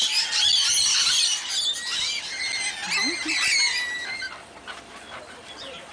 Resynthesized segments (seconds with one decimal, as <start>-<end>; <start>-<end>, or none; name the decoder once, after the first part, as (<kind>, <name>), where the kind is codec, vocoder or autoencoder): none